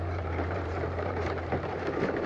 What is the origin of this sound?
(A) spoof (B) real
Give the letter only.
A